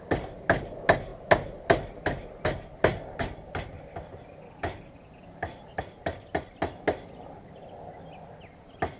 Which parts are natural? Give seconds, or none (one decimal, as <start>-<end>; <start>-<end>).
0.0-9.0